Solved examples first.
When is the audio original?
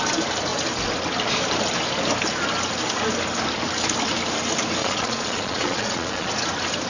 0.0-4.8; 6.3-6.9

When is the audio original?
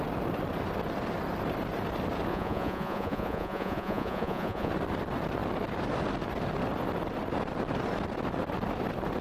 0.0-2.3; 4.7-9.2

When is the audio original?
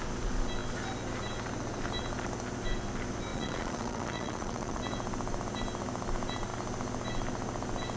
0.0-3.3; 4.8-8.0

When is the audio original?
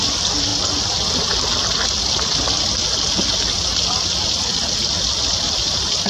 0.0-6.1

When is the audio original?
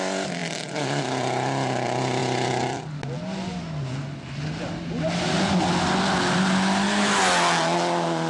0.0-8.3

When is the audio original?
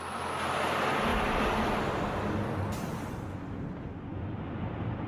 0.0-5.1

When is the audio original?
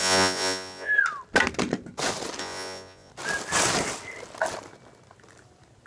0.9-2.4; 3.1-5.9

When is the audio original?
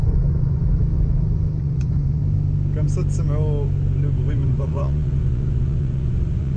0.6-1.6; 2.2-4.3